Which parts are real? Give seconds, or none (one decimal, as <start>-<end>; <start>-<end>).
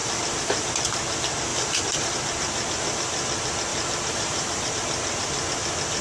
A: 0.7-1.5; 2.1-3.7; 4.7-6.0